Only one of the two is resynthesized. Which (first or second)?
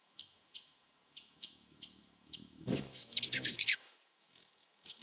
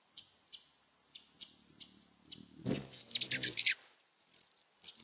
first